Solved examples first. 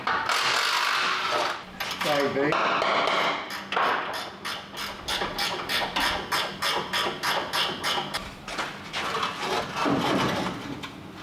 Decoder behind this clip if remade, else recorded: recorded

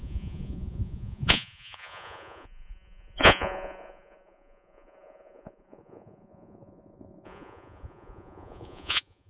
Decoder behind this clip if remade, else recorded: remade, vocoder, Vocos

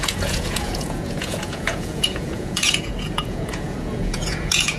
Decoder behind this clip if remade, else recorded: remade, vocoder, Vocos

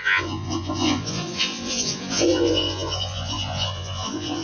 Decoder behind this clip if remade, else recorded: remade, vocoder, Vocos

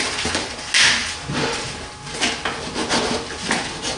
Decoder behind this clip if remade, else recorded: recorded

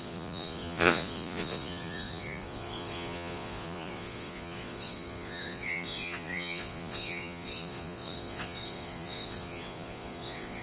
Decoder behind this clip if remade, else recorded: remade, vocoder, Vocos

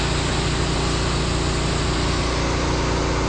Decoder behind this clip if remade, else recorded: recorded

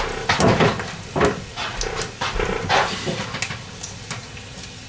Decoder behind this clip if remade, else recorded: recorded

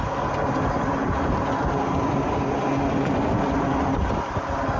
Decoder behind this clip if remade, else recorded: recorded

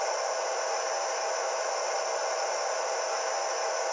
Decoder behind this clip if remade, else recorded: recorded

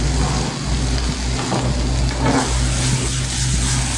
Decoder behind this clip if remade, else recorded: recorded